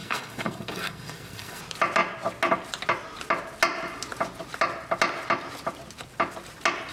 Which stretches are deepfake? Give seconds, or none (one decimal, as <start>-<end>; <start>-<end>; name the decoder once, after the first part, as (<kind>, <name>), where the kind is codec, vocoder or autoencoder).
0.0-1.6 (codec, SNAC)